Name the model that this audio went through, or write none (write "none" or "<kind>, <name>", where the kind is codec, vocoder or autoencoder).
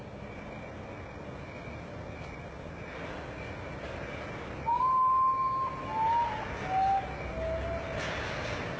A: none